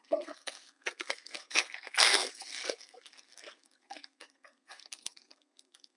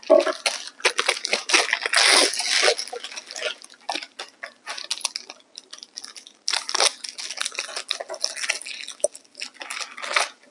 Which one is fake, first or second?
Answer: first